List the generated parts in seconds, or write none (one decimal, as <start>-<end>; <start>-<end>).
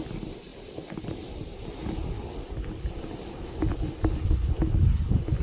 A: none